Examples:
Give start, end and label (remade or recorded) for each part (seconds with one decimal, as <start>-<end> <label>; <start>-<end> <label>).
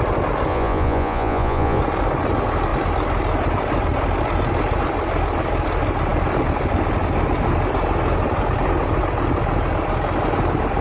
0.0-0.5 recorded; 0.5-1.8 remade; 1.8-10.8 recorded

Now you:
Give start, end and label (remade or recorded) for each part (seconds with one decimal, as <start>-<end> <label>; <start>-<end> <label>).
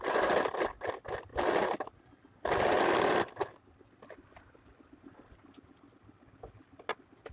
0.0-7.3 recorded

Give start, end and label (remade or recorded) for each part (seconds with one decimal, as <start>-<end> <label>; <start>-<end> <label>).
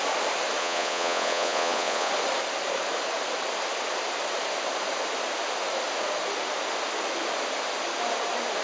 0.0-0.6 recorded; 0.6-2.1 remade; 2.1-8.6 recorded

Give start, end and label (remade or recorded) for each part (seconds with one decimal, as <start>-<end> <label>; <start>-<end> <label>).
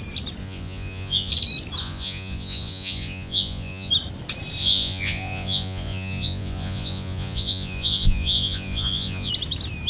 0.0-0.4 recorded; 0.4-1.3 remade; 1.3-1.8 recorded; 1.8-3.9 remade; 3.9-4.6 recorded; 4.6-9.3 remade; 9.3-9.9 recorded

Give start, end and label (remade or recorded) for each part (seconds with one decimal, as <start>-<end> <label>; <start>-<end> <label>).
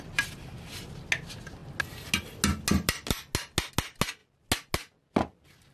0.0-5.7 recorded